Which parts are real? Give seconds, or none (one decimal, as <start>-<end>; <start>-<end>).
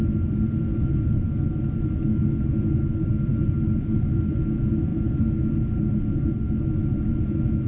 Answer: 0.0-7.7